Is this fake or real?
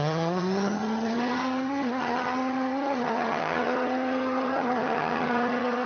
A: fake